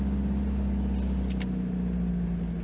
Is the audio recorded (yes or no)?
yes